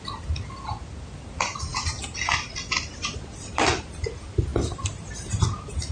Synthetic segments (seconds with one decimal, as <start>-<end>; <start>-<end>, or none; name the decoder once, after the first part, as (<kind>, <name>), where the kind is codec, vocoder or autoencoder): none